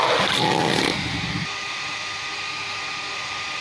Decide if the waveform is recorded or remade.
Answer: recorded